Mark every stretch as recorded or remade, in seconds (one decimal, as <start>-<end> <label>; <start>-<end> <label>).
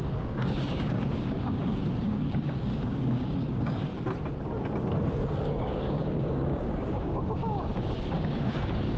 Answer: 0.0-3.9 remade; 3.9-5.3 recorded; 5.3-9.0 remade